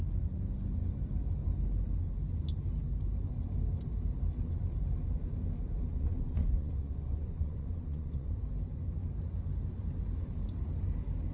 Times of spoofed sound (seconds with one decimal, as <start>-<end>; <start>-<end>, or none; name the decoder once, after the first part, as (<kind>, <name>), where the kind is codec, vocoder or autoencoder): 5.9-8.4 (vocoder, Vocos)